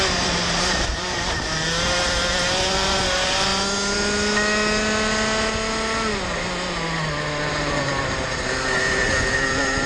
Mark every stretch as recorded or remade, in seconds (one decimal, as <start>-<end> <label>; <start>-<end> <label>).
0.0-3.5 remade; 3.5-7.5 recorded; 7.5-9.9 remade